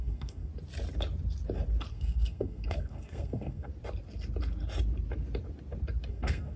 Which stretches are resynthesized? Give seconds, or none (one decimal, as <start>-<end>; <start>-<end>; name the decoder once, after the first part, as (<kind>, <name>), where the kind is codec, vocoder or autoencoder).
0.0-0.5 (codec, SNAC); 1.9-3.7; 6.1-6.6